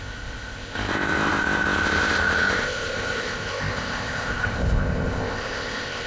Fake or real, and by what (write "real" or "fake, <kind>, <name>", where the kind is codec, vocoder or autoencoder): fake, codec, ZipCodec